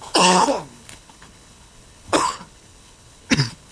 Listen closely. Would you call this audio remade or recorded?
remade